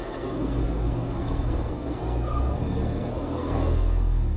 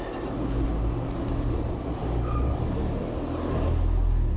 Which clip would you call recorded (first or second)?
second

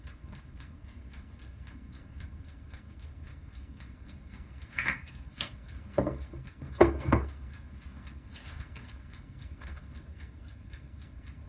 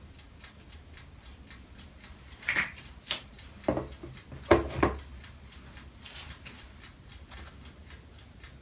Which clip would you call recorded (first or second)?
second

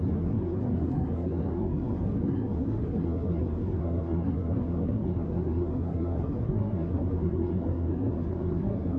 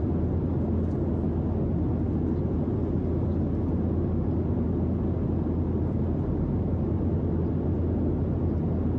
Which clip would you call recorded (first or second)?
second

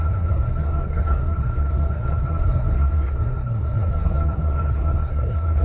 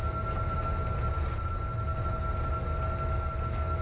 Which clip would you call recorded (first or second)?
second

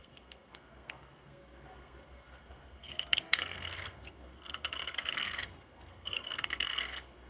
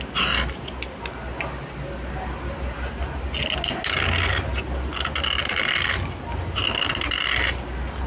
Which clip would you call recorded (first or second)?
second